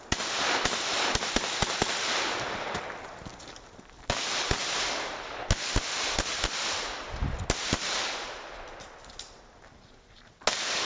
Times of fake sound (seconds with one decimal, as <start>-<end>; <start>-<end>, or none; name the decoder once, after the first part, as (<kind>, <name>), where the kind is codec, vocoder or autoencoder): none